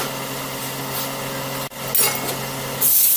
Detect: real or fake real